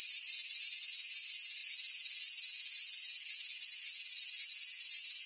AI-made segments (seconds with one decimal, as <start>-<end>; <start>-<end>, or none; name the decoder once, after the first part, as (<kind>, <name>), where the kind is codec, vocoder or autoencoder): 0.0-1.6 (vocoder, BigVGAN v2); 4.8-5.3